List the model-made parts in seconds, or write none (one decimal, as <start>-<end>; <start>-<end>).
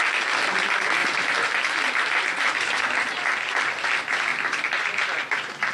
1.0-2.9; 4.3-5.7